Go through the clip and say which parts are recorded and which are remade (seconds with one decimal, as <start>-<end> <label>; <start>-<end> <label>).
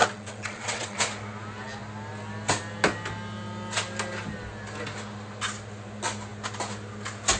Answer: 0.0-1.0 remade; 1.0-7.4 recorded